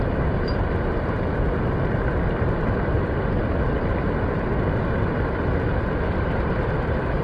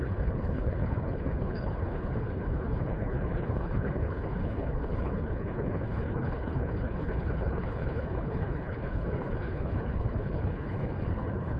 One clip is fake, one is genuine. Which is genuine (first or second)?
first